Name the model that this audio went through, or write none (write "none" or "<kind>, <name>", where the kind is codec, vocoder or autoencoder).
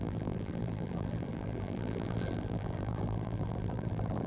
vocoder, BigVGAN v2